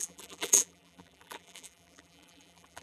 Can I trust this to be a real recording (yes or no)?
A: no